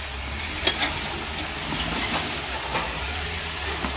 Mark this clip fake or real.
real